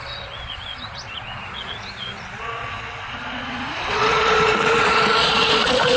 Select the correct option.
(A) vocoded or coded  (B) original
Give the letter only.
A